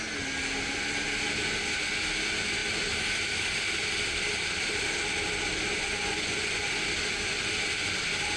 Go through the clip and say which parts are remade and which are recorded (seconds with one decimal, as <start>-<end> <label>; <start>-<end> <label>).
0.0-5.8 recorded; 5.8-6.7 remade; 6.7-8.4 recorded